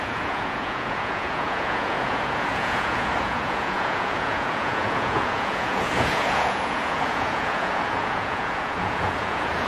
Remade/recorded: remade